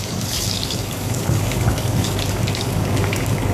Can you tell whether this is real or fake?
fake